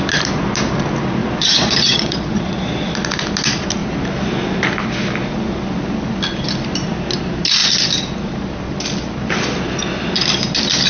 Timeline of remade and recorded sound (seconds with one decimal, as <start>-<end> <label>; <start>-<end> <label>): 0.0-1.2 recorded; 1.2-2.9 remade; 2.9-10.9 recorded